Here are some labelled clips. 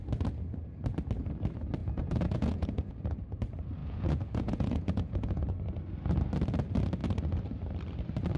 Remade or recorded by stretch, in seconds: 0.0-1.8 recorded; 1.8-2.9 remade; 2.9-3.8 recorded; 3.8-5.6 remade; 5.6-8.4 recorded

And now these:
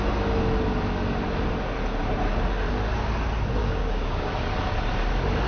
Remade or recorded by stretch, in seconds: 0.0-3.6 recorded; 3.6-4.3 remade; 4.3-5.5 recorded

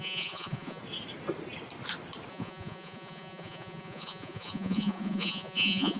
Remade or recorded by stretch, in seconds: 0.0-0.8 remade; 0.8-2.3 recorded; 2.3-6.0 remade

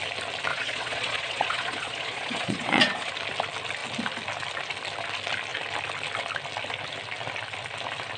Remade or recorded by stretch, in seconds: 0.0-0.5 recorded; 0.5-3.1 remade; 3.1-8.2 recorded